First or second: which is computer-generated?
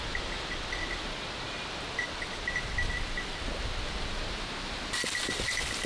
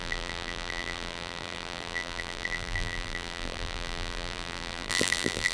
second